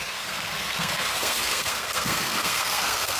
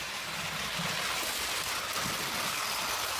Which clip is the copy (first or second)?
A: first